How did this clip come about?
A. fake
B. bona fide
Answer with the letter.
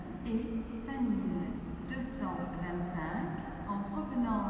B